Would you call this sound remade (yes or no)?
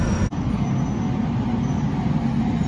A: no